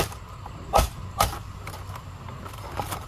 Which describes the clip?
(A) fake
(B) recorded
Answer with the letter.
B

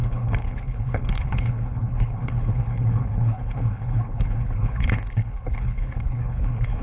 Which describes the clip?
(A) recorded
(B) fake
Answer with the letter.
B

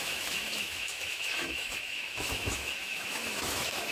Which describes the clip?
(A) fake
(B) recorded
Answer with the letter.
A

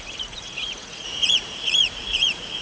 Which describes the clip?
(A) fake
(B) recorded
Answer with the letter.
A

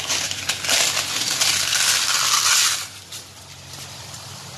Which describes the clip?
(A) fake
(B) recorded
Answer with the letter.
B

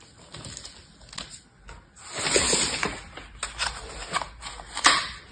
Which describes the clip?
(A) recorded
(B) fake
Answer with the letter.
A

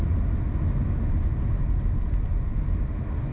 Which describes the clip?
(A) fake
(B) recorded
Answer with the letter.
B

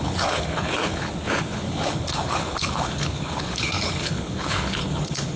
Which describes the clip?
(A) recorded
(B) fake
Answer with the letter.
B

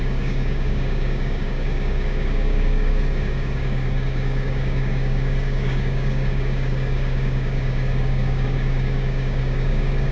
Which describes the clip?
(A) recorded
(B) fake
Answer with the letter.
B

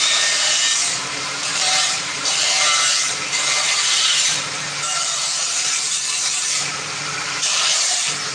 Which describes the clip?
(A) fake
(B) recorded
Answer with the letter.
A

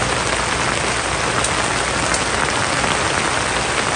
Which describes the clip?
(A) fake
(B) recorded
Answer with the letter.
B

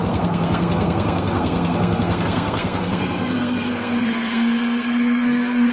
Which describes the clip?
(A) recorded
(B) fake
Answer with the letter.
B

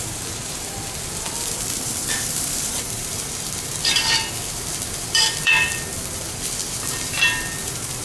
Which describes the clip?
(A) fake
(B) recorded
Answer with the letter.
A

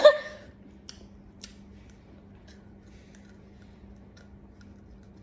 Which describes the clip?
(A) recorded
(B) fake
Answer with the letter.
A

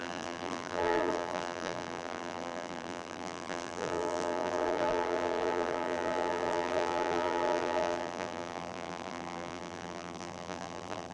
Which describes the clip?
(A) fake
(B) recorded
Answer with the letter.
A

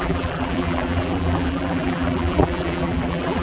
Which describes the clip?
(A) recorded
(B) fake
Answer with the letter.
B